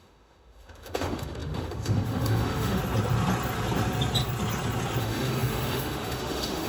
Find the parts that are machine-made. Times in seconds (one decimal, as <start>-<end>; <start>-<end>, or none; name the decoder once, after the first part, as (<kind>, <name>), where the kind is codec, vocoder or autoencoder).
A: 0.0-2.8 (autoencoder, DAC-VAE); 5.0-6.7